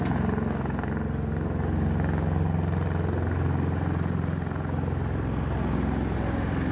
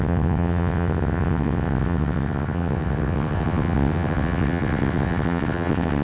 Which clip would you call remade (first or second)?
second